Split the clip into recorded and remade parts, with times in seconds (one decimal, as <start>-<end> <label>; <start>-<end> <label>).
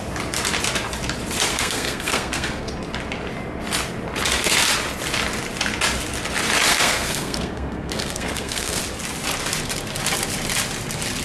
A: 0.0-1.5 recorded; 1.5-2.7 remade; 2.7-6.7 recorded; 6.7-8.8 remade; 8.8-11.2 recorded